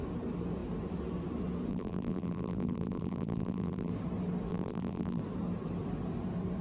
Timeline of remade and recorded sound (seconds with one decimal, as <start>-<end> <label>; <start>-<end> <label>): 0.0-1.7 recorded; 1.7-3.9 remade; 3.9-4.5 recorded; 4.5-5.2 remade; 5.2-6.6 recorded